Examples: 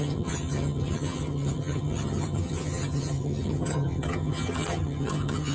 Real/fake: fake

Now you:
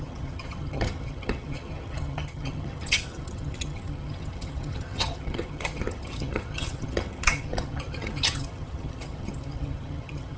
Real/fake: fake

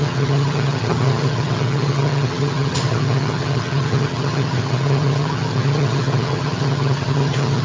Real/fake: fake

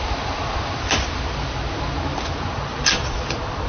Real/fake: real